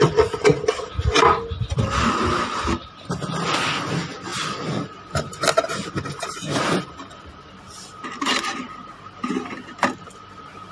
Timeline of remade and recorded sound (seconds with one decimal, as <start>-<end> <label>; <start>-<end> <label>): 0.0-10.7 recorded